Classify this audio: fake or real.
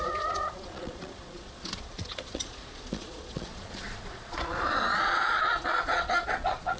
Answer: fake